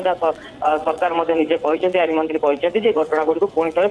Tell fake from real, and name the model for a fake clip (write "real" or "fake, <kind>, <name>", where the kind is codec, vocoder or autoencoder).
fake, vocoder, WaveNeXt